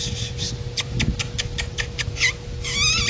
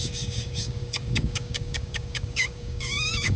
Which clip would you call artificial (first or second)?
second